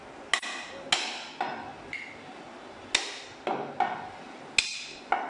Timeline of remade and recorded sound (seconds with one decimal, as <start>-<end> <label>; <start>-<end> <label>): 0.0-5.3 recorded